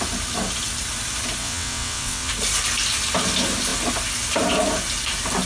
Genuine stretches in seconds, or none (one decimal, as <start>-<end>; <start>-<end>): 0.0-1.4; 2.3-5.5